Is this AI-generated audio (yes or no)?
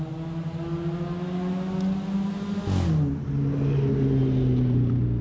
no